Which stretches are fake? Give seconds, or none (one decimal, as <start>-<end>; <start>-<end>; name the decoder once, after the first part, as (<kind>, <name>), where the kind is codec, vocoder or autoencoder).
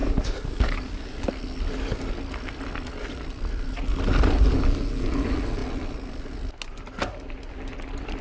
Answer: 0.0-1.2 (codec, DAC)